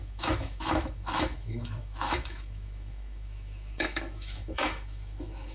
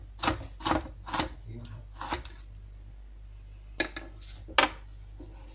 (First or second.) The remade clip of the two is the first